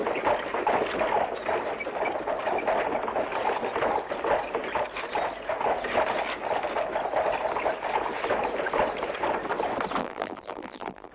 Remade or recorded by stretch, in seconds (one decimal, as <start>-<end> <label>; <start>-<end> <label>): 0.0-10.0 recorded; 10.0-11.1 remade